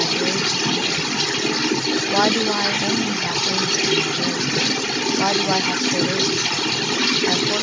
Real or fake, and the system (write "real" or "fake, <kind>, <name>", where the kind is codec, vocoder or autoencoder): real